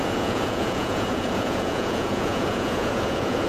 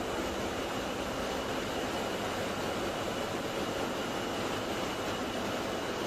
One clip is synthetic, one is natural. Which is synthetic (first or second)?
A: first